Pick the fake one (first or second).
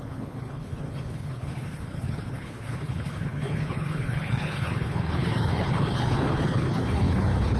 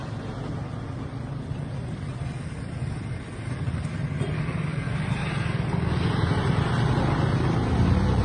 first